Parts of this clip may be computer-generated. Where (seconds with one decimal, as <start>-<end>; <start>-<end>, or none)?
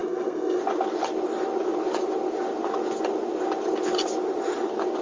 0.0-0.6